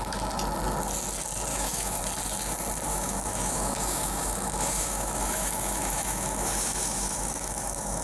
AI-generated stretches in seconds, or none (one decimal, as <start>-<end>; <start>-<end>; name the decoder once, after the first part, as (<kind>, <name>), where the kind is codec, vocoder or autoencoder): 1.5-2.0 (autoencoder, DAC-VAE); 2.9-8.0